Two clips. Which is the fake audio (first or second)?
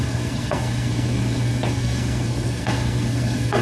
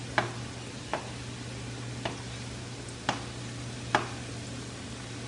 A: first